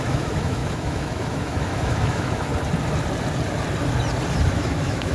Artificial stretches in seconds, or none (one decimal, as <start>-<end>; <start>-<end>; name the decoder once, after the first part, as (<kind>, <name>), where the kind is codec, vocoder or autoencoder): 0.0-2.5 (autoencoder, DAC-VAE); 4.5-5.1